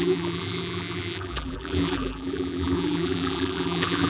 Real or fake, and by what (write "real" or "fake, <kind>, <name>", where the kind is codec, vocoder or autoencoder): fake, vocoder, BigVGAN v2